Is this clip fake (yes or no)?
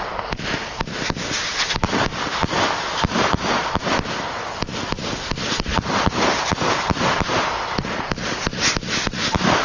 no